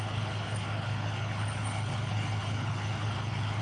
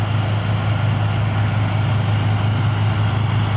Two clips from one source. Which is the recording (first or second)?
second